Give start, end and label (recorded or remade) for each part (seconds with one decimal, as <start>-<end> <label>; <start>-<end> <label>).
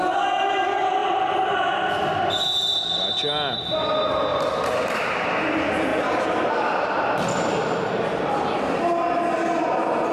0.0-1.0 recorded; 1.0-2.2 remade; 2.2-4.3 recorded; 4.3-5.5 remade; 5.5-5.9 recorded; 5.9-7.5 remade; 7.5-10.1 recorded